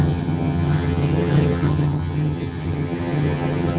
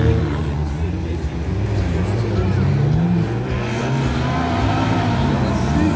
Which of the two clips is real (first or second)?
second